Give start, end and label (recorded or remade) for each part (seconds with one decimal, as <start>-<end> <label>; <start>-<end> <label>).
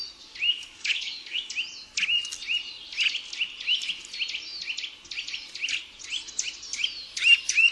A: 0.0-0.5 recorded; 0.5-1.5 remade; 1.5-7.7 recorded